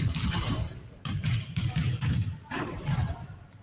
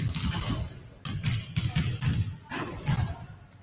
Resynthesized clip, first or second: first